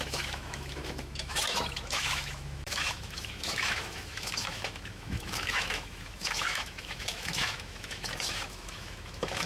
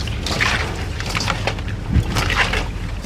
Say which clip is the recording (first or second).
second